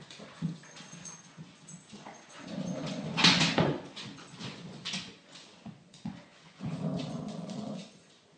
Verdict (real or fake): fake